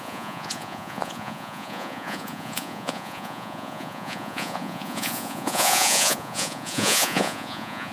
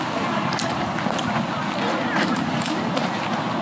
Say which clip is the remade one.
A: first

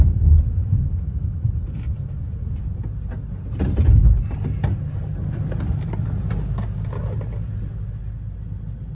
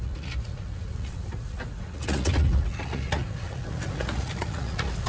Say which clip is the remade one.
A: second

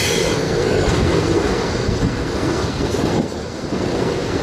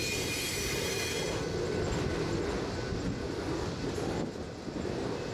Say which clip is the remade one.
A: first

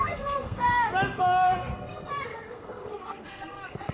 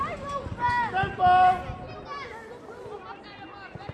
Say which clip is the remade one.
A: first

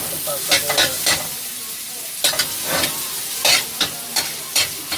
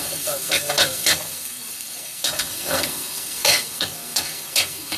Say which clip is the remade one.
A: second